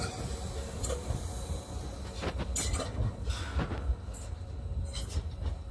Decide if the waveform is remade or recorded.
recorded